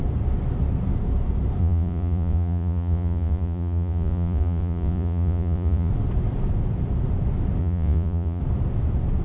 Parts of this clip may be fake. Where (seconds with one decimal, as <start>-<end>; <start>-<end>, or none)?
1.6-5.9; 7.6-8.4